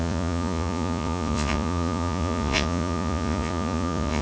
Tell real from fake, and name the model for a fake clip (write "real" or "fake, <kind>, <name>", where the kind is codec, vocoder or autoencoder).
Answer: fake, vocoder, Vocos